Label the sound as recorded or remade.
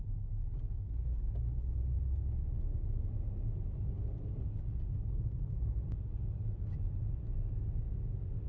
recorded